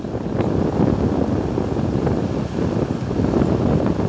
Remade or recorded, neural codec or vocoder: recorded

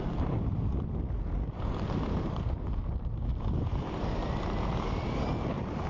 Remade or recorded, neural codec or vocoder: recorded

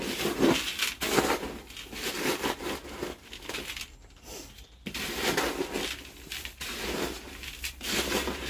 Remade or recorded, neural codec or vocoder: recorded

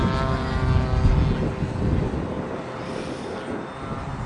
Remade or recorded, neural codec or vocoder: recorded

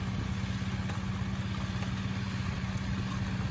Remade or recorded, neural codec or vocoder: recorded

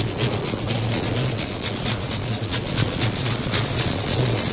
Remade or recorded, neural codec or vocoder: remade, vocoder, Vocos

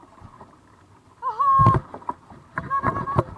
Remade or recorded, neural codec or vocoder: recorded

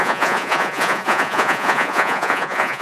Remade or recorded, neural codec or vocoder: remade, vocoder, Vocos